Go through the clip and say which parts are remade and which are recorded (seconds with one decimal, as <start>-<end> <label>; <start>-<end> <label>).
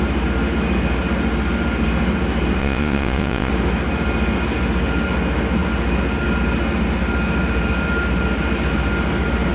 0.0-2.6 recorded; 2.6-3.5 remade; 3.5-9.5 recorded